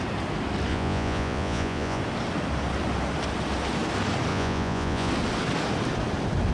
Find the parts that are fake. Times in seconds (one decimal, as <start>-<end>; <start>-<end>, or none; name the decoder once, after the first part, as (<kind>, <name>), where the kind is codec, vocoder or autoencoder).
0.7-2.0 (vocoder, Vocos); 4.3-5.1